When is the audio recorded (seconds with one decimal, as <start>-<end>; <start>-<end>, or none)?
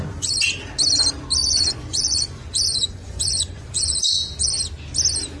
0.0-1.4; 4.6-5.4